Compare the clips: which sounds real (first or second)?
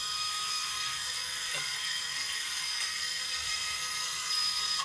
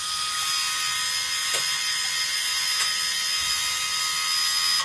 second